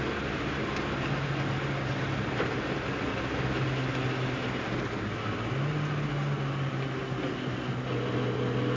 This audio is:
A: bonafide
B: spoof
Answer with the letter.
A